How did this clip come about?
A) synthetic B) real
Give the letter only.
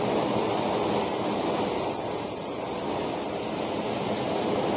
B